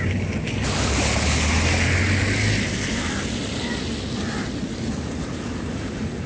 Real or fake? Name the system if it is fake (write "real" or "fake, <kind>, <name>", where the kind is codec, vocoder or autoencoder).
real